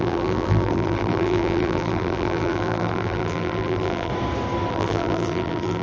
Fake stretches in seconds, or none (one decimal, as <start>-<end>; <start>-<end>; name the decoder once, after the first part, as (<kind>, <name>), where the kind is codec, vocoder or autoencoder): 0.0-4.1 (vocoder, BigVGAN v2); 4.7-5.8